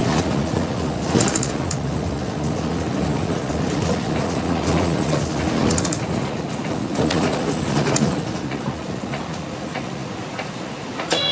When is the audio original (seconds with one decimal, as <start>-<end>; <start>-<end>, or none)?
none